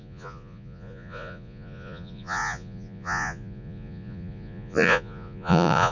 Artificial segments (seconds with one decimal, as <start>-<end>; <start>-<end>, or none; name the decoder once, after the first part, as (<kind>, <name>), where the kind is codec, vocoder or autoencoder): 0.0-5.9 (vocoder, Vocos)